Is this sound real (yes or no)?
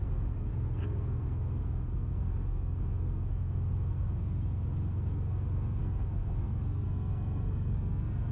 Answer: no